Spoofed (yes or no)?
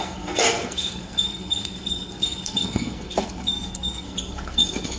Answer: yes